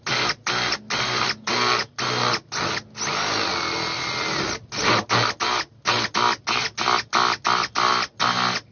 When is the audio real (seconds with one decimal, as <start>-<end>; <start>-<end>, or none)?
0.0-8.7